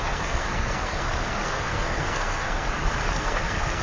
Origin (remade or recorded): remade